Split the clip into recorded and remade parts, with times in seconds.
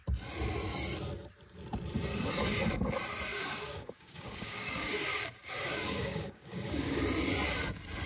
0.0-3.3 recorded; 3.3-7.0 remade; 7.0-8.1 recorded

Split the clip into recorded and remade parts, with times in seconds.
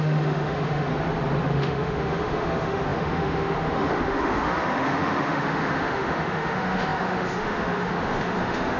0.0-0.9 remade; 0.9-1.4 recorded; 1.4-8.8 remade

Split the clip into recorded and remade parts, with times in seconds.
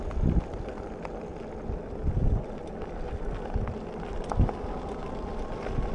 0.0-5.9 recorded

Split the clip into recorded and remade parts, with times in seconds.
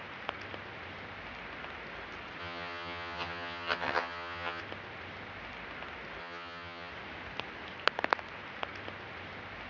0.0-2.4 recorded; 2.4-4.6 remade; 4.6-6.2 recorded; 6.2-6.9 remade; 6.9-9.7 recorded